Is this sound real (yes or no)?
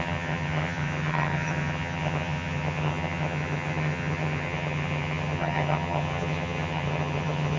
no